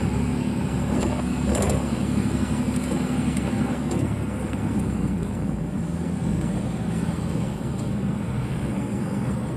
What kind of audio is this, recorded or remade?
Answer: remade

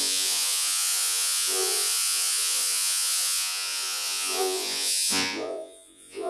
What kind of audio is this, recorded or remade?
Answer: remade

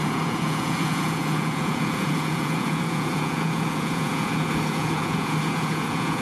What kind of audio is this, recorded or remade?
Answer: remade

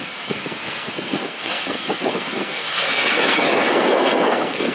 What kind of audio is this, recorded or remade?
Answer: remade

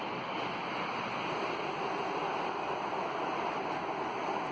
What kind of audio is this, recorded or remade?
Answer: recorded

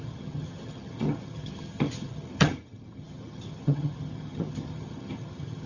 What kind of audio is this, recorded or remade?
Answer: remade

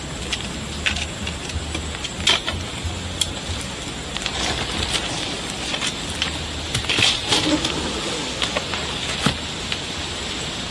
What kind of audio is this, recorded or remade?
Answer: recorded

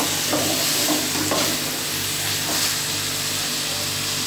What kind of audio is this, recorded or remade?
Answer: recorded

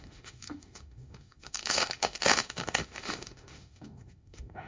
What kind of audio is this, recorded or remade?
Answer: remade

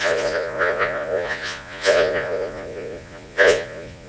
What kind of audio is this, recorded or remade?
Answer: remade